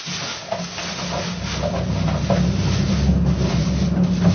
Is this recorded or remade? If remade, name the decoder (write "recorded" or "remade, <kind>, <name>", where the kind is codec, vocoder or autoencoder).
recorded